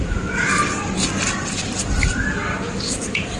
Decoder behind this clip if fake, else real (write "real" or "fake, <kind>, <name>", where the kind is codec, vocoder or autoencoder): real